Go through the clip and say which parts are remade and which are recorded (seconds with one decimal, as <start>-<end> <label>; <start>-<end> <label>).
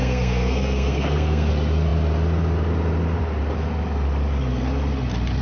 0.0-1.5 remade; 1.5-5.4 recorded